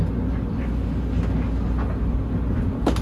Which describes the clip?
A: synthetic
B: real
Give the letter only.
B